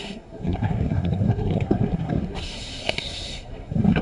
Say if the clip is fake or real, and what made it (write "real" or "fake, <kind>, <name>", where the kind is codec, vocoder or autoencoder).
fake, codec, SNAC